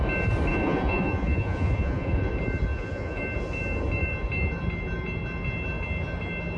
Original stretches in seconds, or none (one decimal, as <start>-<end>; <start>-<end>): 0.0-0.5; 2.3-2.7; 3.2-6.6